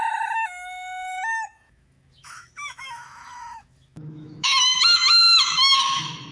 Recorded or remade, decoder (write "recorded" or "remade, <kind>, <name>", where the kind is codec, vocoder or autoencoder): remade, autoencoder, DAC-VAE